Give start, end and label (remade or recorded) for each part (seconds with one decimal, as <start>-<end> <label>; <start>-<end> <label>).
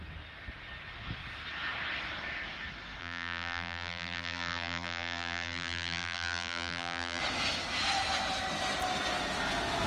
0.0-3.0 recorded; 3.0-7.2 remade; 7.2-9.9 recorded